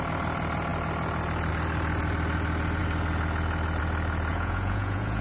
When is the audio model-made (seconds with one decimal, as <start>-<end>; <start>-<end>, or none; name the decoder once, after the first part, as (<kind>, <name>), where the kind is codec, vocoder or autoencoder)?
4.3-5.2 (vocoder, Vocos)